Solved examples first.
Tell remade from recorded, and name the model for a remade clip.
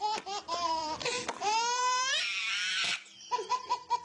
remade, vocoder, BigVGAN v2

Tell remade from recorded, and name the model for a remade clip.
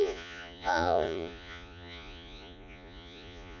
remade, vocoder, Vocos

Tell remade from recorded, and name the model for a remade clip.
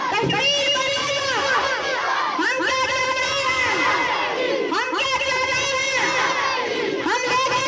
recorded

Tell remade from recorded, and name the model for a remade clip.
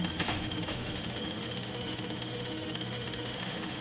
remade, autoencoder, DAC-VAE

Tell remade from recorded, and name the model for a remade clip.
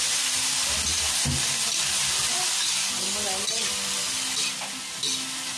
recorded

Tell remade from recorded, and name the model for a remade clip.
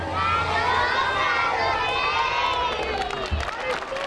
recorded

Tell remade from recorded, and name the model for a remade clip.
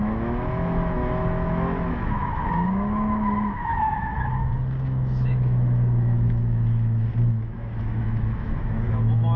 remade, autoencoder, DAC-VAE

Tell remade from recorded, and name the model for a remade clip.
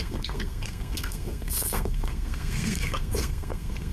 remade, codec, SNAC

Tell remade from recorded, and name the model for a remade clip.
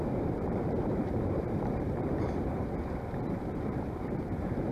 remade, vocoder, BigVGAN v2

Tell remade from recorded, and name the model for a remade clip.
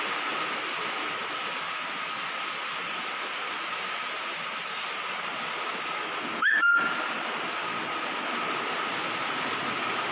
recorded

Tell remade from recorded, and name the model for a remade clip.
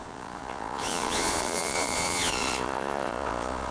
remade, vocoder, Vocos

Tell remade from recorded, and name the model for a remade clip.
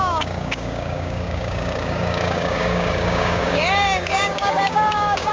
remade, codec, DAC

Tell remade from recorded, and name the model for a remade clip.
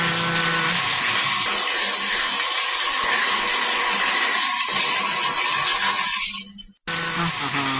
recorded